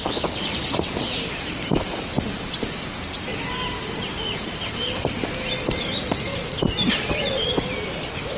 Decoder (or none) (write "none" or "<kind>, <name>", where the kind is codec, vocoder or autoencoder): none